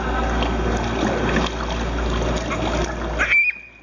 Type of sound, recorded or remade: recorded